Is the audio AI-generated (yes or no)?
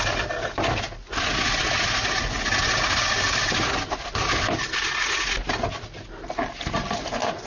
no